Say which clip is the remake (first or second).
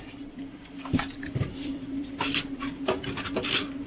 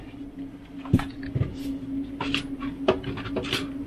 first